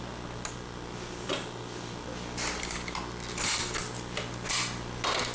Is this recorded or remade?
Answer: recorded